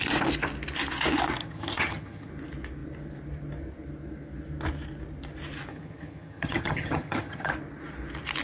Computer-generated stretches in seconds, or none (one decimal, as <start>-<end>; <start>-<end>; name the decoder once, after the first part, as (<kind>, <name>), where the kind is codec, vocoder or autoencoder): 1.4-2.3 (vocoder, HiFi-GAN); 5.7-7.5